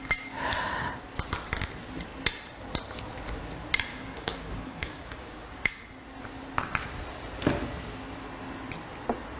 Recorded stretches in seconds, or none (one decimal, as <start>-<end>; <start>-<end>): 0.0-3.9; 5.7-9.4